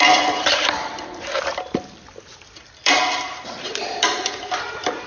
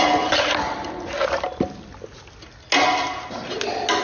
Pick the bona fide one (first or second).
second